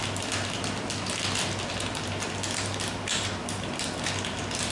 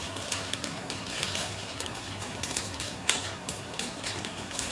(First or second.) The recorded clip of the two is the first